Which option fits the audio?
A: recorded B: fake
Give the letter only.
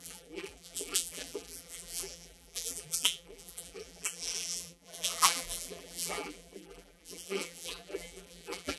B